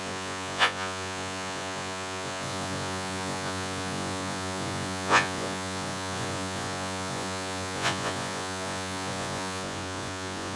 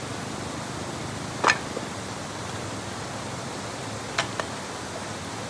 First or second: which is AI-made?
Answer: first